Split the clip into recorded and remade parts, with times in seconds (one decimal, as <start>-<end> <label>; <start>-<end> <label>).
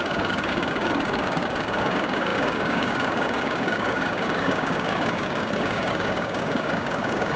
0.0-7.4 remade